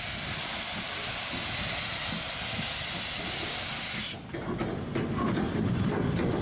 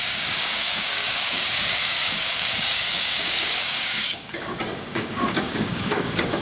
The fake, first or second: second